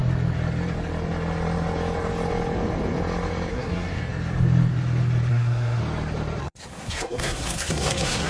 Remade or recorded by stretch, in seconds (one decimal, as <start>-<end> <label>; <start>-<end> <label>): 0.0-3.5 recorded; 3.5-4.0 remade; 4.0-5.3 recorded; 5.3-5.8 remade; 5.8-6.4 recorded; 6.4-8.3 remade